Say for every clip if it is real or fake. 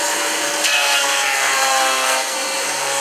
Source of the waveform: fake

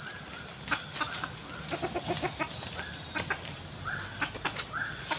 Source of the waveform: real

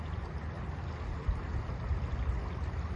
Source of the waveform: real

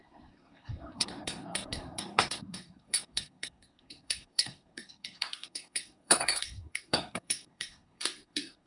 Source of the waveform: fake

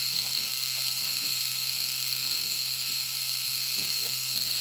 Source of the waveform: fake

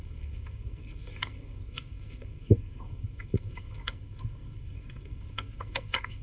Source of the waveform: fake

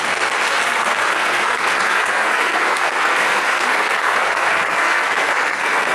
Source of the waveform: fake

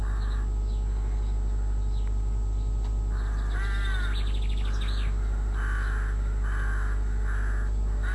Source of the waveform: real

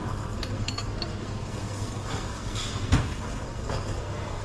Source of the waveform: fake